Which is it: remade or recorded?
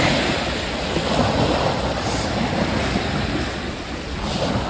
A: recorded